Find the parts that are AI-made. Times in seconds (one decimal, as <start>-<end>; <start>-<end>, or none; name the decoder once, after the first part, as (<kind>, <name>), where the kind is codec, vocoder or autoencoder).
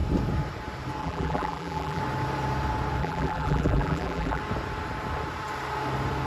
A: 1.0-2.0 (vocoder, BigVGAN v2); 3.0-4.4